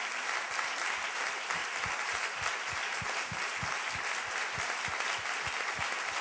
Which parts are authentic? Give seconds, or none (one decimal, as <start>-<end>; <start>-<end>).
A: 0.0-6.2